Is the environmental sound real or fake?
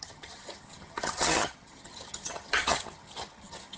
fake